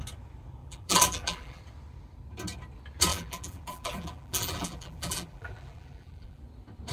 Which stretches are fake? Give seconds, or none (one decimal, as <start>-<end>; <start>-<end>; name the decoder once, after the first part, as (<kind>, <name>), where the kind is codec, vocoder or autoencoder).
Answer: 0.6-1.6 (vocoder, BigVGAN v2); 3.1-6.4